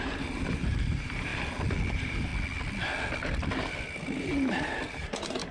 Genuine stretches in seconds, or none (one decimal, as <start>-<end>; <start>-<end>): 1.3-1.9; 2.3-4.2

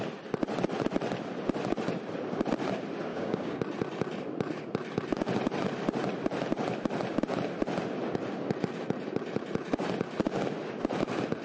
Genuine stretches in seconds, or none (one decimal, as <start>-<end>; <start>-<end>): 0.0-3.1; 3.6-11.4

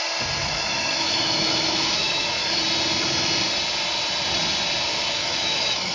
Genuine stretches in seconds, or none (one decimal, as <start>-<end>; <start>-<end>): 0.0-0.4; 2.6-4.9